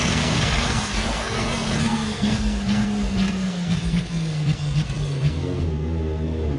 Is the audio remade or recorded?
remade